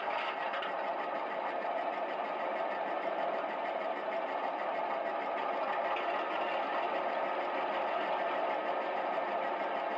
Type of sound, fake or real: real